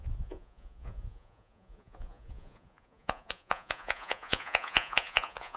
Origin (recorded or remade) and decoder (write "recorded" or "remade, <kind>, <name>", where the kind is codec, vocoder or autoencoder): remade, vocoder, Vocos